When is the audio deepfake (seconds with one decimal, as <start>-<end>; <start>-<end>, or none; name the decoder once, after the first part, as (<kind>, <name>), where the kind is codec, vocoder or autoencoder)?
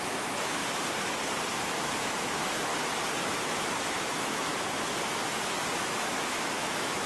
0.0-0.6 (autoencoder, DAC-VAE); 1.6-2.7; 3.2-4.5; 5.7-7.1